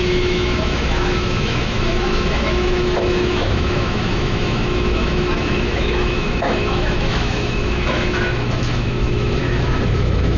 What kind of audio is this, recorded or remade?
remade